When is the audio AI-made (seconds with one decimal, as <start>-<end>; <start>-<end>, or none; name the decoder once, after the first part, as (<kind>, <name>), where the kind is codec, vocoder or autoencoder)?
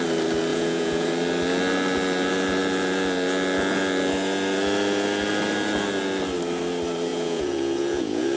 0.5-1.1 (vocoder, Vocos); 7.1-8.4